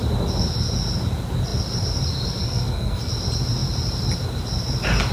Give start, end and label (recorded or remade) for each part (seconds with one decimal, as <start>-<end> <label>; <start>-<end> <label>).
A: 0.0-2.4 recorded; 2.4-3.1 remade; 3.1-5.1 recorded